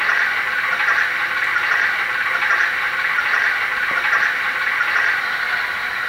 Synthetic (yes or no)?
no